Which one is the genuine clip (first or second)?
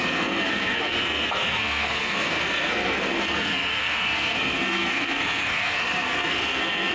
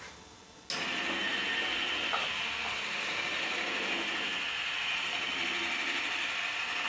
second